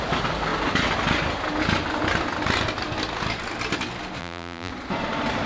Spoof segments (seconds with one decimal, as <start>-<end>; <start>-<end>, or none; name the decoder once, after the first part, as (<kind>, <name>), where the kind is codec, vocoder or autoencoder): 4.2-4.7 (vocoder, BigVGAN v2)